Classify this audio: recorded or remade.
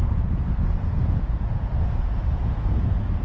remade